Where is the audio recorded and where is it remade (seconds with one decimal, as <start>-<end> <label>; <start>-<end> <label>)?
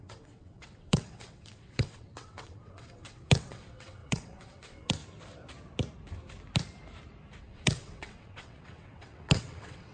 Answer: 0.0-5.0 remade; 5.0-7.4 recorded; 7.4-9.9 remade